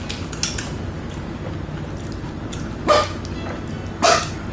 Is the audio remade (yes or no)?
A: no